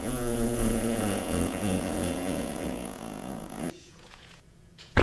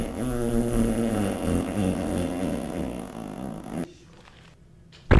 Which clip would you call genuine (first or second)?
second